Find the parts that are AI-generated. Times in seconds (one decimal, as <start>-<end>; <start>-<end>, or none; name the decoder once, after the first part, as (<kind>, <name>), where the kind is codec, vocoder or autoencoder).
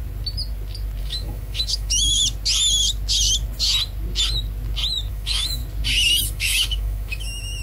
1.0-2.2 (autoencoder, DAC-VAE); 5.1-5.6; 6.2-7.6